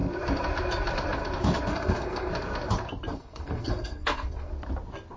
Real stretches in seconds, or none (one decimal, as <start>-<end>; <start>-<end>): 0.0-1.7; 2.3-3.1; 4.5-5.2